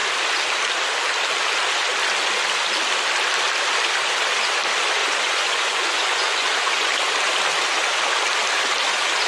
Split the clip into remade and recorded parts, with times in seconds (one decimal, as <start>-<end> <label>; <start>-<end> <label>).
0.0-5.0 recorded; 5.0-6.9 remade; 6.9-9.3 recorded